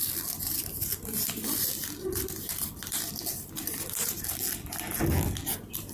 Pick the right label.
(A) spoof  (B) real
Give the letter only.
A